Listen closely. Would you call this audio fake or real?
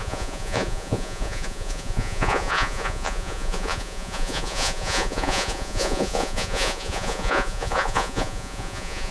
fake